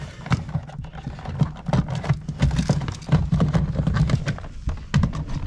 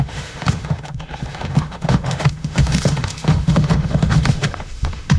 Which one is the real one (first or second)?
first